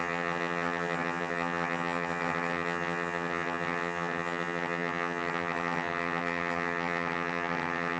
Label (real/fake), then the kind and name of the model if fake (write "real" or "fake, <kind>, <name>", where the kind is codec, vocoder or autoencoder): fake, vocoder, HiFi-GAN